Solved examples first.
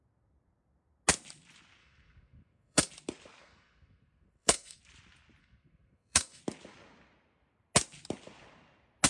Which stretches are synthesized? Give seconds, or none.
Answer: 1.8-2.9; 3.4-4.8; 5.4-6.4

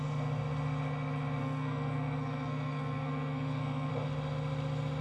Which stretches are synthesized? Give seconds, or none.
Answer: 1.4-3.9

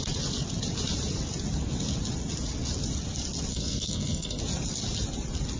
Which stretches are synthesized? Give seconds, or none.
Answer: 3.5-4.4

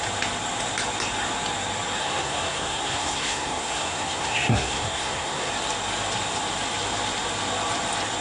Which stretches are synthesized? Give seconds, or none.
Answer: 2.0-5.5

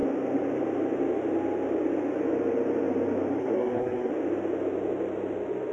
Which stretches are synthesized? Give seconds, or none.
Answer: 3.4-4.1